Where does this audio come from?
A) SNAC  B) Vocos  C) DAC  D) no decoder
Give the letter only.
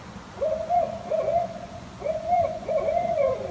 B